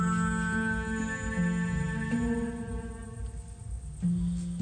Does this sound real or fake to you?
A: real